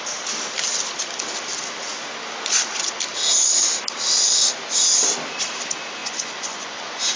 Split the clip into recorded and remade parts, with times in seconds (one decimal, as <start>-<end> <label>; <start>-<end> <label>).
0.0-6.0 recorded; 6.0-7.2 remade